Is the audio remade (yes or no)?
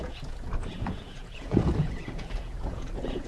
yes